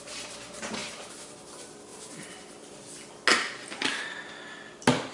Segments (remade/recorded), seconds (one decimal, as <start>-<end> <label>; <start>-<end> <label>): 0.0-5.1 recorded

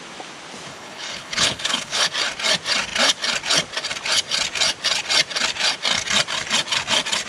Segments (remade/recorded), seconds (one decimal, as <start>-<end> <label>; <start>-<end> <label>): 0.0-0.7 recorded; 0.7-2.1 remade; 2.1-7.3 recorded

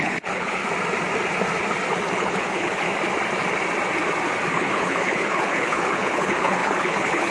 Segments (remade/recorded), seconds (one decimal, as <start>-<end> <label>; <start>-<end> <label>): 0.0-0.6 remade; 0.6-2.1 recorded; 2.1-2.9 remade; 2.9-4.5 recorded; 4.5-7.3 remade

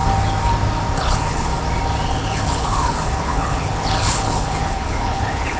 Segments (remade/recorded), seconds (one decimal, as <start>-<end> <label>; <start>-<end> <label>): 0.0-1.0 recorded; 1.0-1.5 remade; 1.5-2.1 recorded; 2.1-5.6 remade

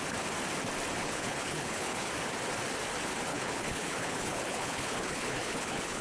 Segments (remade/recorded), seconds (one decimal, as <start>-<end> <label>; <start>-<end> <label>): 0.0-1.0 recorded; 1.0-2.1 remade; 2.1-3.3 recorded; 3.3-6.0 remade

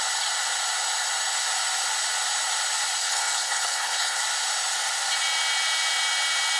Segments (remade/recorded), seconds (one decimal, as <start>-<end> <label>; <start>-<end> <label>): 0.0-3.0 recorded; 3.0-4.2 remade; 4.2-6.6 recorded

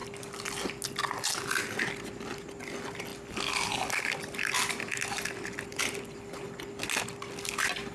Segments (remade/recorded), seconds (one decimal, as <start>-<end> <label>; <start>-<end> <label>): 0.0-7.9 recorded

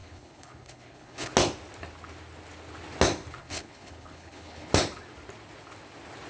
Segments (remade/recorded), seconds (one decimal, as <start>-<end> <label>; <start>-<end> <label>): 0.0-1.3 remade; 1.3-3.4 recorded; 3.4-4.7 remade; 4.7-6.3 recorded